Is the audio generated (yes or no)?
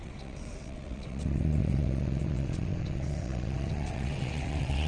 yes